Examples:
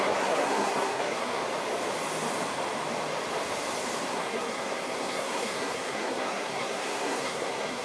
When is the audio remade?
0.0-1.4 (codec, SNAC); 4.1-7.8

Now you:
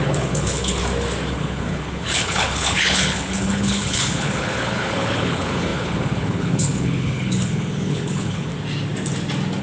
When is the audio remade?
0.0-0.8 (codec, HILCodec); 1.3-8.5

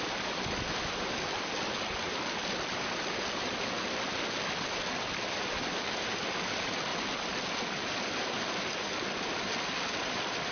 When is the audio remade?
none

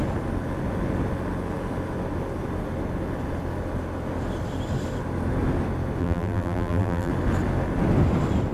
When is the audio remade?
6.0-7.1 (vocoder, BigVGAN v2)